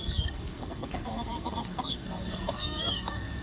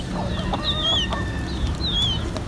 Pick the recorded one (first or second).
second